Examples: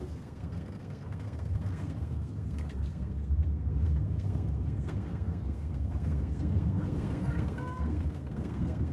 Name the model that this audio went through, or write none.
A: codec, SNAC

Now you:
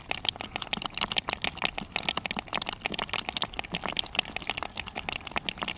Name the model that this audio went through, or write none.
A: none